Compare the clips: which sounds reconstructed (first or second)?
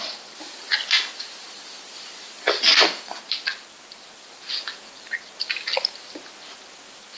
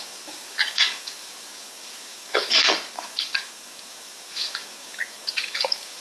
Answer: second